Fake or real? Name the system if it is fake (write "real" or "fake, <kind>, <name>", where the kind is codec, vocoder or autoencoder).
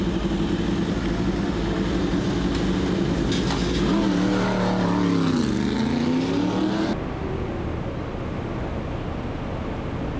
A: real